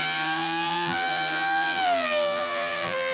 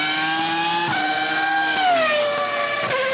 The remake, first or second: first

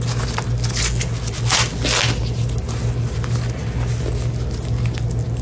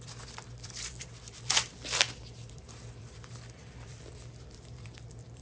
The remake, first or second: second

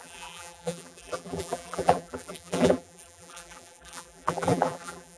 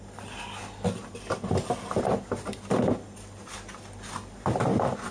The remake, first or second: first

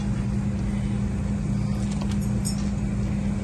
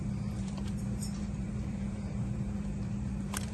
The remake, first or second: second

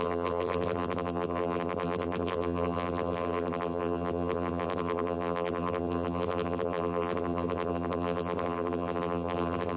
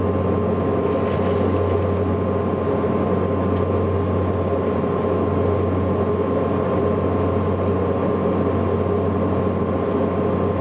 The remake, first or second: first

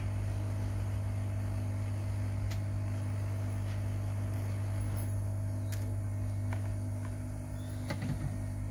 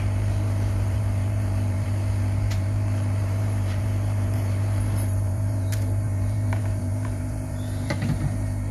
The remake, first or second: second